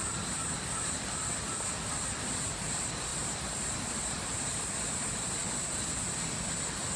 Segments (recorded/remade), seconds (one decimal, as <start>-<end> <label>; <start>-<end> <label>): 0.0-7.0 recorded